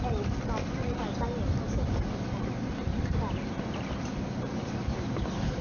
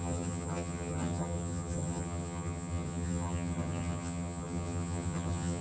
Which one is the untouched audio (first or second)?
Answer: first